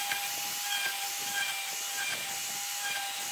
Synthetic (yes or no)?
no